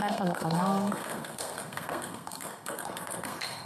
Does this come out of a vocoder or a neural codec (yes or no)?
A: yes